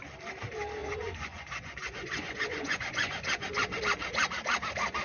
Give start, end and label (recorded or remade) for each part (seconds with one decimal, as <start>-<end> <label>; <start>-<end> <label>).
0.0-0.8 recorded; 0.8-3.8 remade; 3.8-5.0 recorded

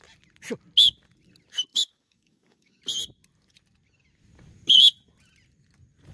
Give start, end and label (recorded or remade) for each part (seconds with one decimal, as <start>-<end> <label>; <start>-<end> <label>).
0.0-1.7 recorded; 1.7-2.8 remade; 2.8-6.1 recorded

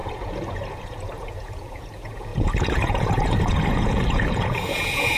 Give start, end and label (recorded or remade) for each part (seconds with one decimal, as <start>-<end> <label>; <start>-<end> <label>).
0.0-5.2 remade

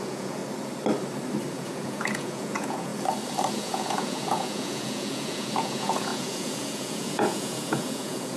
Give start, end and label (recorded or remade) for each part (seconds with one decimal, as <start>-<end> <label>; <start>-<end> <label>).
0.0-0.4 remade; 0.4-1.5 recorded; 1.5-2.9 remade; 2.9-3.5 recorded; 3.5-8.4 remade